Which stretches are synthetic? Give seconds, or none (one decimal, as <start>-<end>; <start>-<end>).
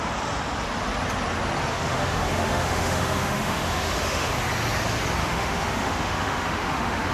1.7-4.3; 5.2-7.1